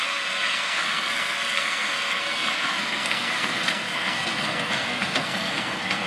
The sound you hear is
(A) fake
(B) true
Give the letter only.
A